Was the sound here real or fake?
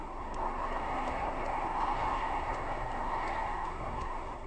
fake